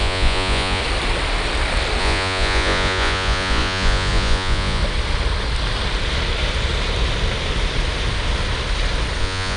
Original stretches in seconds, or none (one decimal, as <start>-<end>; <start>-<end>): 0.8-2.0; 4.8-9.2